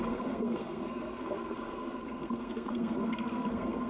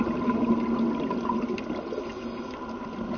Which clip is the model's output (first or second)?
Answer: first